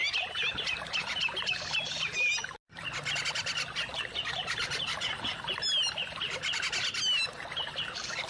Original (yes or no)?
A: yes